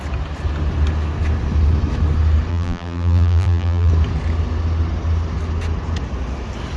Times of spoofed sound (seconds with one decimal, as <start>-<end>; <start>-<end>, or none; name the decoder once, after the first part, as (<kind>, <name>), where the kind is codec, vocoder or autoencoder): 2.5-3.9 (vocoder, BigVGAN v2)